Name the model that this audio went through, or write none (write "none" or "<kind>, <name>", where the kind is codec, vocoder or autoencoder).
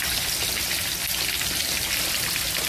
none